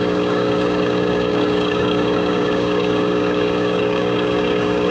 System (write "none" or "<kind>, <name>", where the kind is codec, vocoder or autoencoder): codec, DAC